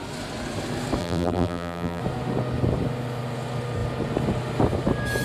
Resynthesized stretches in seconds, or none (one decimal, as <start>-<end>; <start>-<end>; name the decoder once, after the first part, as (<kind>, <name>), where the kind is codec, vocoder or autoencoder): 1.0-2.0 (vocoder, BigVGAN v2)